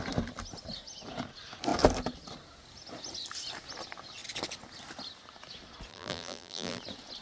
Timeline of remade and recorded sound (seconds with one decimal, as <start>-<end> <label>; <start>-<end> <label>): 0.0-5.9 recorded; 5.9-6.8 remade; 6.8-7.2 recorded